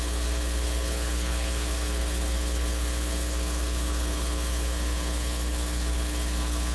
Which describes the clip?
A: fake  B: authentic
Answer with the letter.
A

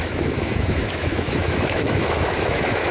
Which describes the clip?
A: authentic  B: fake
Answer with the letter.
B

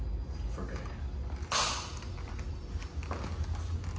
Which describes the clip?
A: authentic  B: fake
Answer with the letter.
A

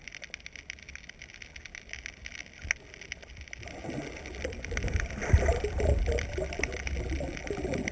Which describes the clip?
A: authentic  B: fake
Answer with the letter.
A